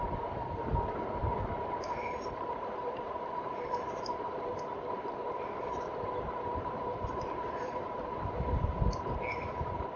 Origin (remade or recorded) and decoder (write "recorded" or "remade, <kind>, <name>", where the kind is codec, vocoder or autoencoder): remade, vocoder, BigVGAN v2